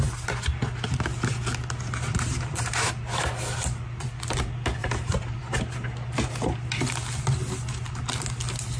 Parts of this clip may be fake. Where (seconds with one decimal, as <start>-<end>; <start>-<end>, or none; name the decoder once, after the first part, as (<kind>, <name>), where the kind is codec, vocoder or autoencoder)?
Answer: 2.1-2.9 (vocoder, BigVGAN v2); 4.8-5.4